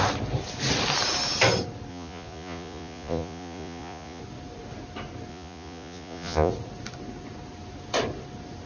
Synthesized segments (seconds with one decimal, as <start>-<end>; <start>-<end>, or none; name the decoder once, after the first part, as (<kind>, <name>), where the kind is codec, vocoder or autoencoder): 1.9-4.2 (vocoder, Vocos); 5.3-6.5